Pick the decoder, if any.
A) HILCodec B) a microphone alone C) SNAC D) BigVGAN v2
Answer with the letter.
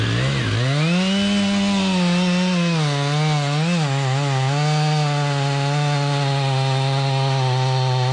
B